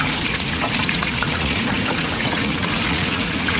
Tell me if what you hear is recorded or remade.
remade